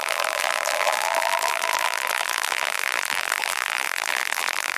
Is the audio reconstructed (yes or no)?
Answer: yes